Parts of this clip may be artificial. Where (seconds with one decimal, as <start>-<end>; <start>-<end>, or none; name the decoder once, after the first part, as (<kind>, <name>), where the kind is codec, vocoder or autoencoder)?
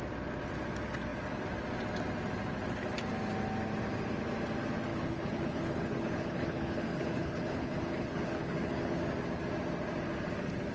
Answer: 4.9-9.0 (codec, HILCodec)